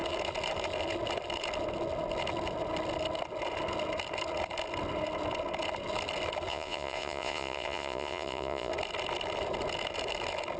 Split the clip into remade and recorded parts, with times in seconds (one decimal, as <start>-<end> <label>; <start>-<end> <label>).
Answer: 0.0-6.5 recorded; 6.5-8.7 remade; 8.7-10.6 recorded